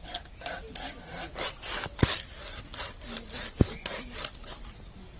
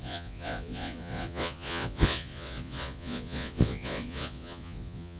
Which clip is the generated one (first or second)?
second